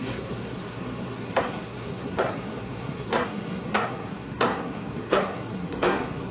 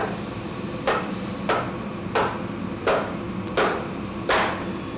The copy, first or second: first